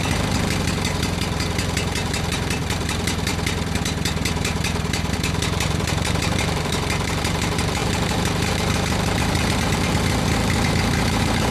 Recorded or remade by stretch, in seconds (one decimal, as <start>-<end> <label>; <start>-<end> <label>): 0.0-3.3 remade; 3.3-4.0 recorded; 4.0-11.5 remade